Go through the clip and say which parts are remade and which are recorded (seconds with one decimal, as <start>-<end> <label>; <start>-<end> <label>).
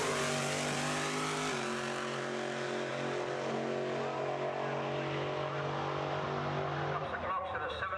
0.0-8.0 recorded